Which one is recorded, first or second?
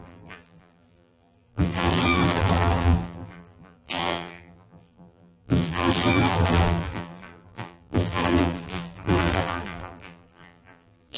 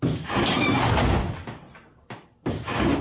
second